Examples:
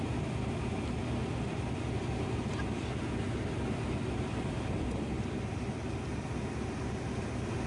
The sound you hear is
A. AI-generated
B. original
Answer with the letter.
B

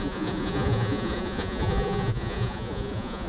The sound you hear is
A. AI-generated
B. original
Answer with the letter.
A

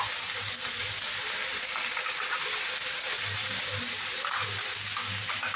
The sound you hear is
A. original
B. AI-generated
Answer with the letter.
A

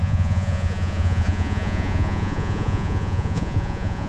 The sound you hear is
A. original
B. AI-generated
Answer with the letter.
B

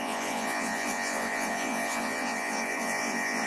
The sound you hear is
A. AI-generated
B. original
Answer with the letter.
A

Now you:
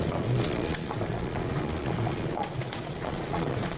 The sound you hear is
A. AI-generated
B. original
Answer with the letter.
A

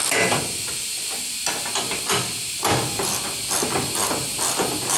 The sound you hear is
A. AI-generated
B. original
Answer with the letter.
B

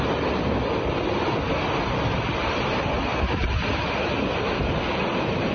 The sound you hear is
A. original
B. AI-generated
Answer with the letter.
A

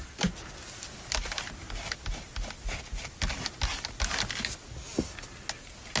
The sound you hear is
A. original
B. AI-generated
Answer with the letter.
A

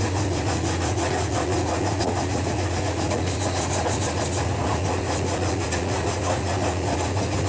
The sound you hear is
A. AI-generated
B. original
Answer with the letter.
A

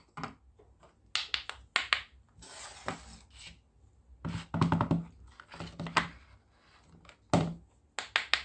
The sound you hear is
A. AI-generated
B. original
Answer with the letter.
B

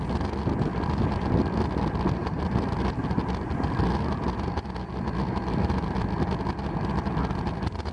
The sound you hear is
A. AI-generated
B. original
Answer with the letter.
B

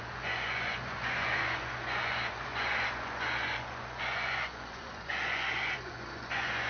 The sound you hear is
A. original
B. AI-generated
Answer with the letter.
B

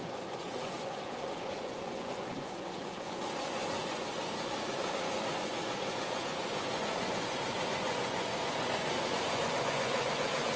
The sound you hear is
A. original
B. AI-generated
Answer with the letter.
B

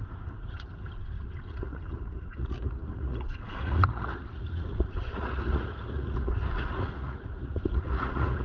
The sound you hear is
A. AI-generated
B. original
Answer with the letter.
A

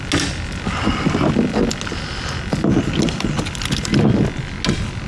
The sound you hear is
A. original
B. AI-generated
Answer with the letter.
A